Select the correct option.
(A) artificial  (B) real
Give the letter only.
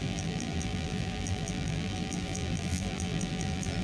A